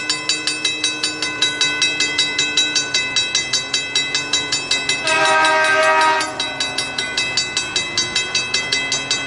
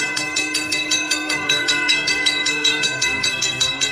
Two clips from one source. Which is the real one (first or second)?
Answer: first